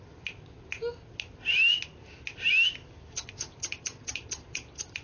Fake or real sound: real